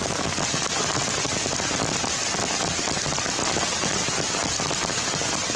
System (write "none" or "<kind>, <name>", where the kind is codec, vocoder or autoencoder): none